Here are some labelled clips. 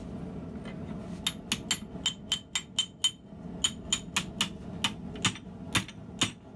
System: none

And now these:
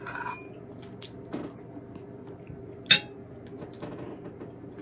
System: none